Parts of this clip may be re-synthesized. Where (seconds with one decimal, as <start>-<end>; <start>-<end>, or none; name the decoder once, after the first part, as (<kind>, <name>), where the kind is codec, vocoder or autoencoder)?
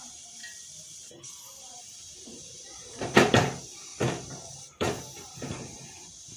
0.0-0.4 (vocoder, BigVGAN v2); 1.6-3.9; 4.6-6.4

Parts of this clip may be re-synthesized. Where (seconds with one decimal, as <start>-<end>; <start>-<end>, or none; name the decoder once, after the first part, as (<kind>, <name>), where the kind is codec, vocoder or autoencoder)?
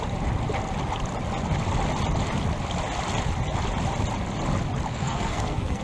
4.9-5.8 (codec, SNAC)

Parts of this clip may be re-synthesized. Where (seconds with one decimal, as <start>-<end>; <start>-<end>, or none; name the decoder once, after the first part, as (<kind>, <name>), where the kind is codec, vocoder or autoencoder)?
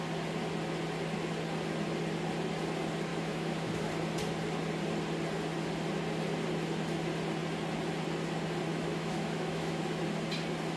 3.1-3.9 (autoencoder, DAC-VAE); 8.7-9.8